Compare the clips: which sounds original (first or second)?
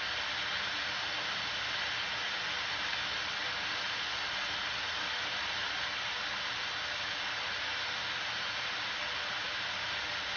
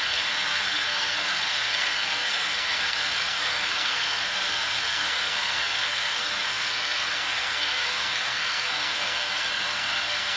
first